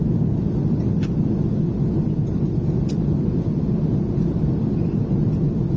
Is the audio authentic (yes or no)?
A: yes